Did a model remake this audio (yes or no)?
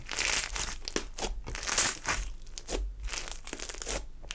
no